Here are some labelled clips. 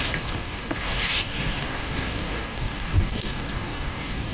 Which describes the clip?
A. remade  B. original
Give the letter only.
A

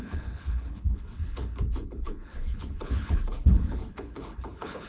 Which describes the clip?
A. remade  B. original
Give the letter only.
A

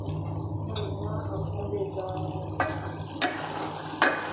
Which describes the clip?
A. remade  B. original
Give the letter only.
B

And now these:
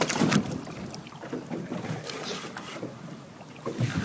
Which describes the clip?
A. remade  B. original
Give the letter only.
B